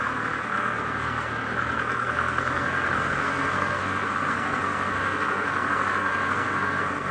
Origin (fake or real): fake